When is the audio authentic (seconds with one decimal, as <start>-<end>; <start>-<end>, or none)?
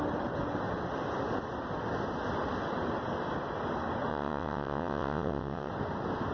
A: 0.0-4.1; 5.7-6.3